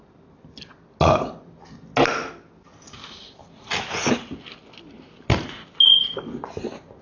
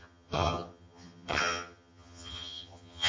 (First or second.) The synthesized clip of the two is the second